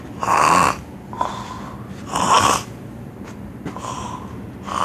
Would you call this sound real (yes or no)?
yes